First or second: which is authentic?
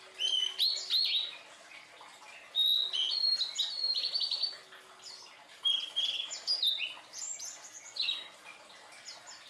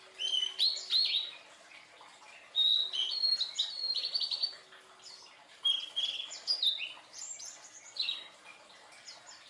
first